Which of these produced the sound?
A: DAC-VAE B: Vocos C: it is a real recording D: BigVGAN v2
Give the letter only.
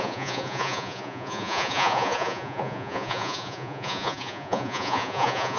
B